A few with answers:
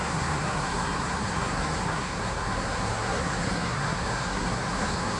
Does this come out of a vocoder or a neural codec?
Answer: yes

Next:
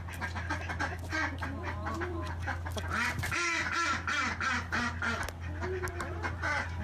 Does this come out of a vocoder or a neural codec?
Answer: no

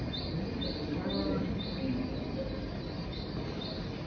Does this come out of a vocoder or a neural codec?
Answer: no